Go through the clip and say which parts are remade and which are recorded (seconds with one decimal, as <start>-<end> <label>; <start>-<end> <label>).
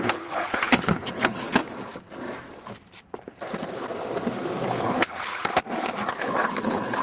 0.0-1.6 remade; 1.6-4.7 recorded; 4.7-5.4 remade; 5.4-6.1 recorded; 6.1-7.0 remade